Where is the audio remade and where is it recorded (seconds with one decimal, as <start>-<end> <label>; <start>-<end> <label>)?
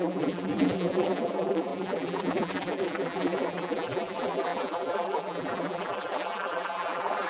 0.0-7.3 remade